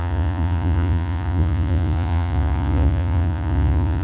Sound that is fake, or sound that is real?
fake